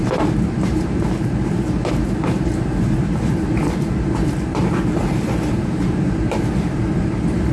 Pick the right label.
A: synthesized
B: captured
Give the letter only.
A